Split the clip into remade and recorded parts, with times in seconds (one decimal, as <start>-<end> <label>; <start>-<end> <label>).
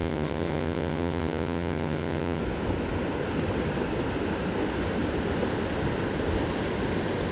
0.0-2.4 remade; 2.4-7.3 recorded